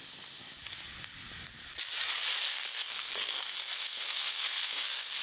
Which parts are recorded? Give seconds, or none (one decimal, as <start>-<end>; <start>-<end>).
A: 0.0-2.5